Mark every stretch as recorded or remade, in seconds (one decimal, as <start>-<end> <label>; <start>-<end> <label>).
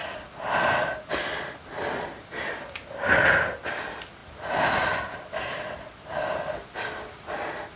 0.0-7.8 recorded